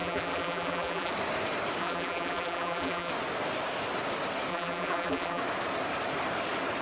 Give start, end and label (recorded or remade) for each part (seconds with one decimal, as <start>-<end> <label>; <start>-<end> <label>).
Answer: 0.0-1.1 remade; 1.1-1.8 recorded; 1.8-3.1 remade; 3.1-4.5 recorded; 4.5-5.4 remade; 5.4-6.8 recorded